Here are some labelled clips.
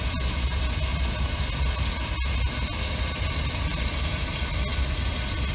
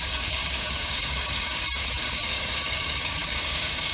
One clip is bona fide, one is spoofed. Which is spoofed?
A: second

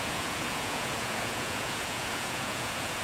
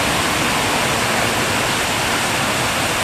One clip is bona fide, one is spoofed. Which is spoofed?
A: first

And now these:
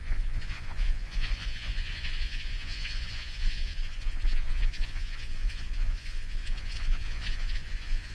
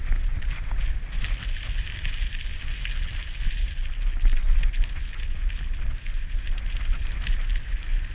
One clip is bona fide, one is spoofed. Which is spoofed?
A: first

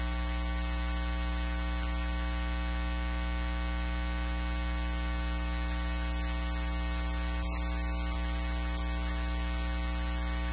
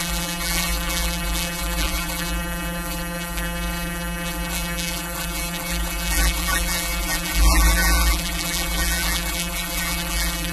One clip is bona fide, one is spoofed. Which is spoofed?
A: second